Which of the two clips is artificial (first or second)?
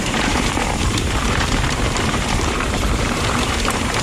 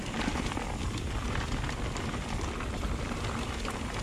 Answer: first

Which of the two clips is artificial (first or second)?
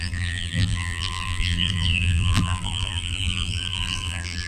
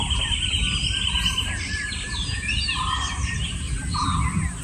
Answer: first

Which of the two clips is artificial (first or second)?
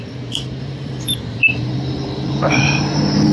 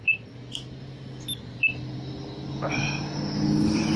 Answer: first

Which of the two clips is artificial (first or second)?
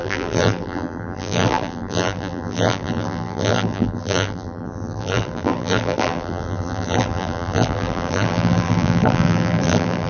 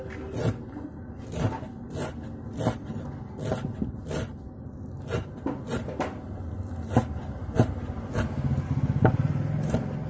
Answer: first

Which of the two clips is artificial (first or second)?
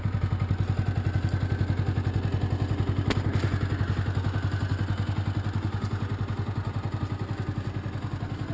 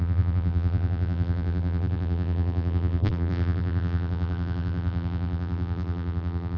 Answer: second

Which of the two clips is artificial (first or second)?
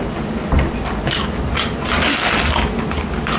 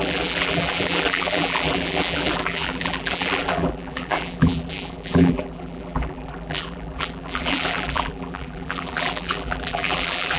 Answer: second